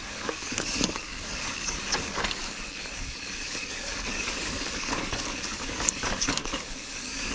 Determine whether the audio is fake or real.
fake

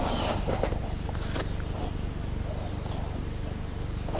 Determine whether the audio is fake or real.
real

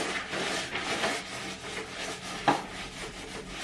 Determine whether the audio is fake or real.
real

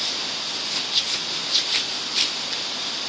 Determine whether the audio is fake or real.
real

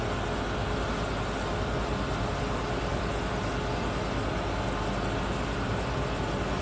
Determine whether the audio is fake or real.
real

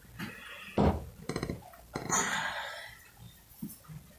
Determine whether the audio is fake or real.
real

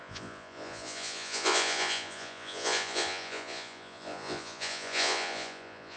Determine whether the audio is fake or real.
fake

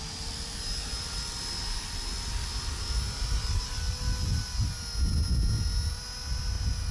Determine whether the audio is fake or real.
real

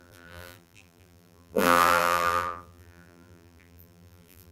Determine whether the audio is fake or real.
fake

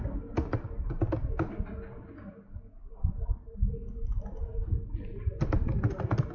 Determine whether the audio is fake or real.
real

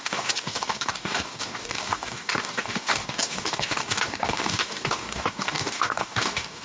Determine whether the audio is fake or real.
fake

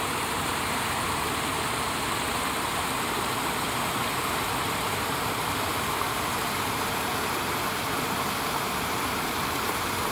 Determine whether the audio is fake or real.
fake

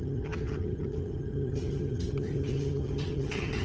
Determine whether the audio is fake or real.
fake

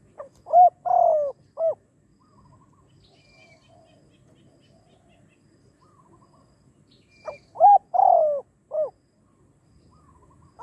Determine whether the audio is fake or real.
real